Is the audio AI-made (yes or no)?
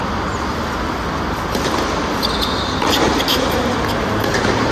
no